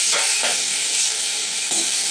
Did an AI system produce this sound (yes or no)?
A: yes